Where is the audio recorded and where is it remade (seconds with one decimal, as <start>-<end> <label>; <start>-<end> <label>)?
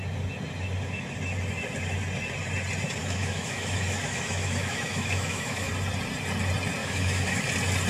0.0-3.0 recorded; 3.0-5.7 remade; 5.7-6.8 recorded; 6.8-7.4 remade; 7.4-7.9 recorded